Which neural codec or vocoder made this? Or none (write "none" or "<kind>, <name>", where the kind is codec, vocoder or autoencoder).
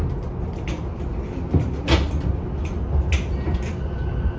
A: none